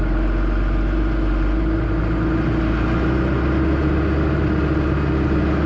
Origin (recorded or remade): recorded